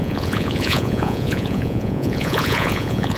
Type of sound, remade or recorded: remade